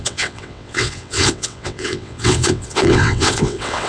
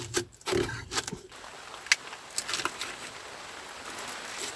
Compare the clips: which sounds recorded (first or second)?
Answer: second